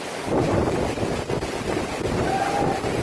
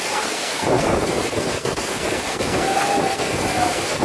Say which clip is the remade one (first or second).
second